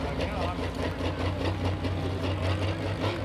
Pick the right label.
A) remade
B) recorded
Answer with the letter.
B